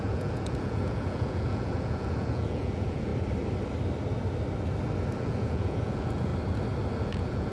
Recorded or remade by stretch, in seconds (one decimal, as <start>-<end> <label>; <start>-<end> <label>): 0.0-3.1 remade; 3.1-5.2 recorded; 5.2-6.3 remade; 6.3-7.0 recorded; 7.0-7.5 remade